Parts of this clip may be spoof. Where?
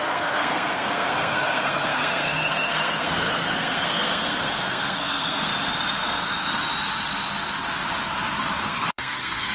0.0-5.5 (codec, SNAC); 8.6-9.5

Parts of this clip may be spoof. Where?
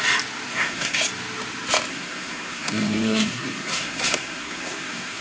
0.5-1.0 (codec, SNAC); 1.9-5.2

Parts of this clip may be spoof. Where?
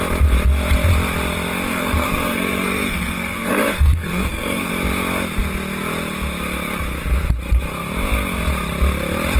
1.7-4.7 (codec, SNAC)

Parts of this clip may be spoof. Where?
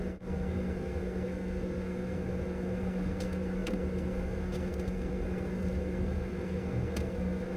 0.0-7.6 (codec, SNAC)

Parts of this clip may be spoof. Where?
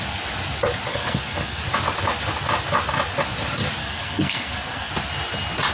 0.9-1.6 (codec, SNAC); 3.8-4.9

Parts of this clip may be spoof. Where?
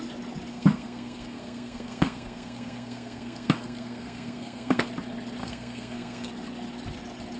0.5-4.9 (codec, SNAC); 5.4-6.3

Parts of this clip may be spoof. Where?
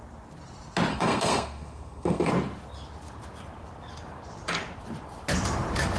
0.9-2.3 (codec, SNAC)